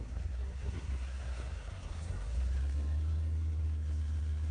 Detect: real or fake fake